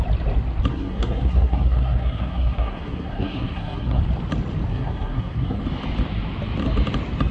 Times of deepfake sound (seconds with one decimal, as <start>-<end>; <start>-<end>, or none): 0.7-4.0; 4.7-5.6